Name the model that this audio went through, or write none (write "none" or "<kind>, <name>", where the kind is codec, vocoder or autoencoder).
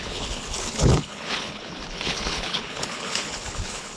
codec, HILCodec